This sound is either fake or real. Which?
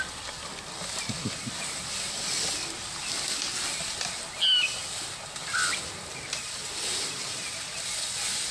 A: real